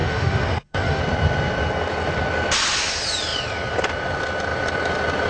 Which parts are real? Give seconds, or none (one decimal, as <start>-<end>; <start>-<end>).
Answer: 1.0-5.3